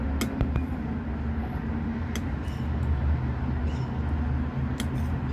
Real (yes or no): yes